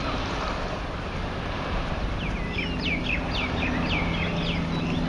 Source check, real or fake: real